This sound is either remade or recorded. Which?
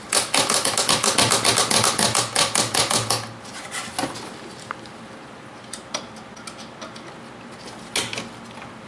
recorded